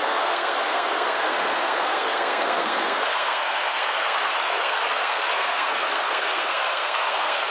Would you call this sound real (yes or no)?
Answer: no